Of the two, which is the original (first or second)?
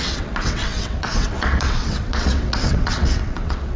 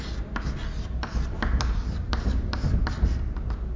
second